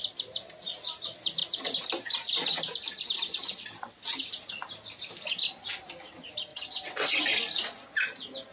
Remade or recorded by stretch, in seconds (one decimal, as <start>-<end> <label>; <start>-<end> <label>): 0.0-6.5 recorded; 6.5-7.2 remade; 7.2-8.5 recorded